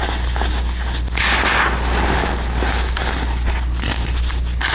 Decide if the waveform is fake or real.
real